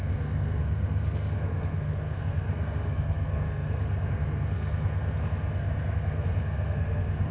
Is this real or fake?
fake